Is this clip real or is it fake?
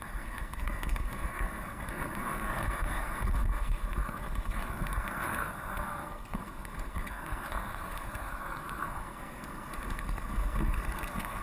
fake